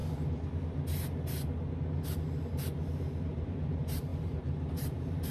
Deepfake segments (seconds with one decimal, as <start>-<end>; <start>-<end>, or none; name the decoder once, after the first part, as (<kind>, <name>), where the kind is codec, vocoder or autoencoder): 3.2-5.3 (vocoder, BigVGAN v2)